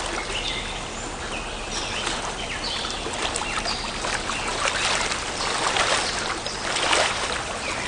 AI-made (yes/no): no